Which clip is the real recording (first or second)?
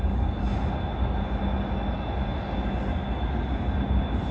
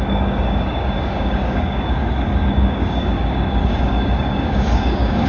first